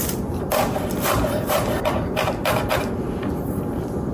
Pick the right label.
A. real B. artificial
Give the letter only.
B